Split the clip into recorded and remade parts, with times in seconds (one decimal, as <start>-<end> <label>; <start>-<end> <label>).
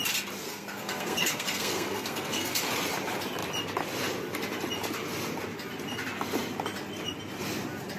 0.0-0.4 recorded; 0.4-2.6 remade; 2.6-8.0 recorded